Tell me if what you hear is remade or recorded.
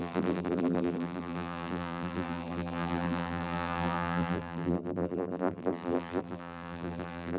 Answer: remade